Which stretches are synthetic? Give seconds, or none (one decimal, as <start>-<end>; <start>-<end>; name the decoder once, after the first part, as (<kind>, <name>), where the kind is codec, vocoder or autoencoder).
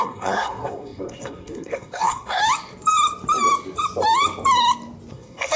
0.0-2.4 (codec, SNAC); 5.1-5.6